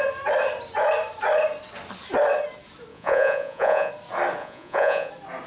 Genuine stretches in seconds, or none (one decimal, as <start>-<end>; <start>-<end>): 0.0-2.9; 3.9-4.4; 5.1-5.5